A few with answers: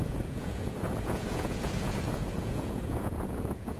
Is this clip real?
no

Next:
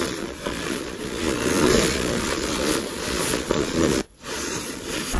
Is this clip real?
no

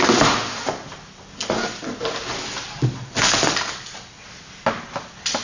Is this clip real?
yes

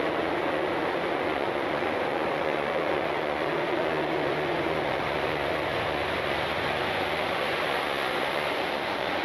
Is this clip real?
no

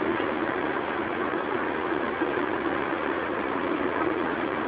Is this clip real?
no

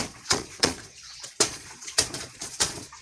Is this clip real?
no